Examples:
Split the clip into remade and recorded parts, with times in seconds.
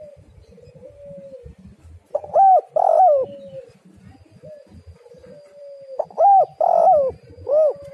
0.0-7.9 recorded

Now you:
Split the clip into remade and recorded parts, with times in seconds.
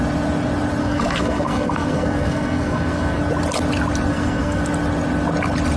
0.0-0.8 recorded; 0.8-3.2 remade; 3.2-4.1 recorded; 4.1-4.6 remade; 4.6-5.8 recorded